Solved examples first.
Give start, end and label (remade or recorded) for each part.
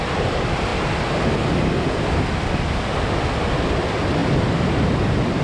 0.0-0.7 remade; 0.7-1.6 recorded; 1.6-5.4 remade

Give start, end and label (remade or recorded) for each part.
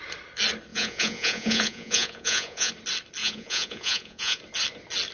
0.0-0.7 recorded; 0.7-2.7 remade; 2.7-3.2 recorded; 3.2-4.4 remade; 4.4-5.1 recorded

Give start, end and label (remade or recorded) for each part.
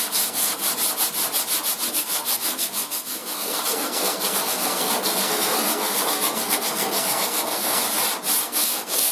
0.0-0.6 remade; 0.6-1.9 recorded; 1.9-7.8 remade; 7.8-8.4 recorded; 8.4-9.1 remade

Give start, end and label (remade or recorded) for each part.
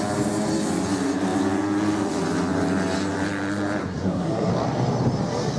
0.0-3.8 recorded; 3.8-4.5 remade; 4.5-5.6 recorded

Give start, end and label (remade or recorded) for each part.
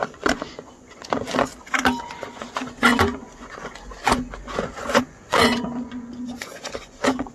0.0-1.5 remade; 1.5-2.0 recorded; 2.0-7.3 remade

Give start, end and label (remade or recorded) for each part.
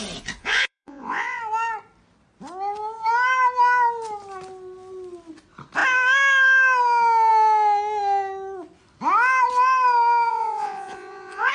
0.0-0.4 recorded; 0.4-1.4 remade; 1.4-10.3 recorded; 10.3-11.5 remade